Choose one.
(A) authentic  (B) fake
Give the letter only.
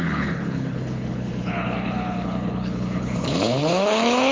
B